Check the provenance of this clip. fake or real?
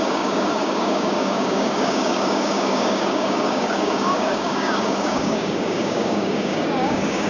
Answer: fake